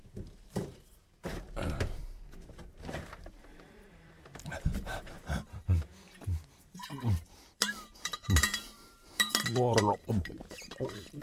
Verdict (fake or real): fake